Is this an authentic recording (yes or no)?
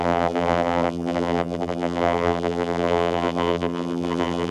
no